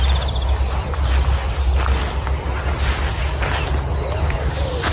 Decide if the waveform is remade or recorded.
recorded